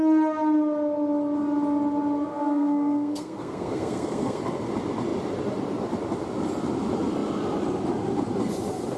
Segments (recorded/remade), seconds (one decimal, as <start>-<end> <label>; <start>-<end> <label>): 0.0-2.3 recorded; 2.3-4.4 remade; 4.4-9.0 recorded